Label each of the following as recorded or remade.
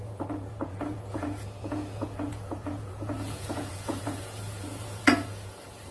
remade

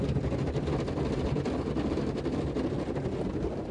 recorded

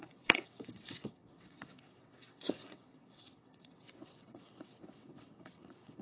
remade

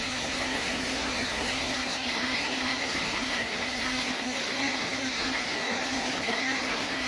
remade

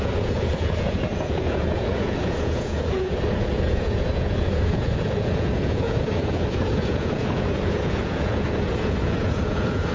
remade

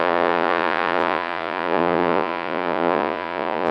remade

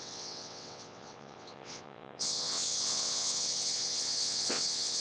remade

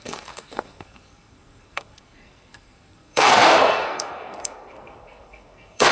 remade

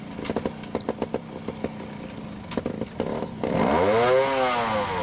recorded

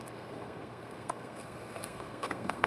remade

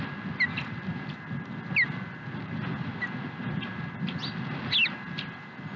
recorded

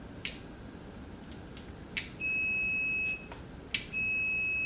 recorded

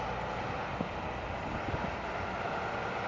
recorded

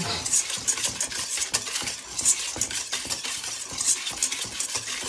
recorded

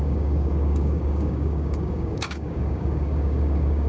remade